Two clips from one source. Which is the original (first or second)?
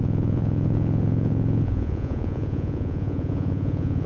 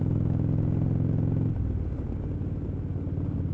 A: second